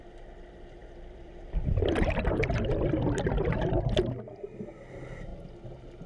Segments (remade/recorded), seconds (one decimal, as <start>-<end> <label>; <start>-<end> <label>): 0.0-0.8 recorded; 0.8-2.8 remade; 2.8-6.1 recorded